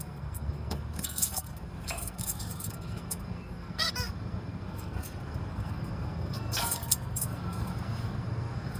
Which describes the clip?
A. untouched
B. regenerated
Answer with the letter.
B